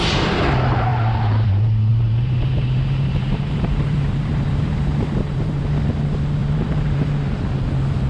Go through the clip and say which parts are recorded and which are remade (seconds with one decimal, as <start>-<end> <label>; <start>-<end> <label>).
0.0-0.9 recorded; 0.9-1.5 remade; 1.5-1.9 recorded; 1.9-5.6 remade; 5.6-6.4 recorded; 6.4-7.1 remade; 7.1-8.1 recorded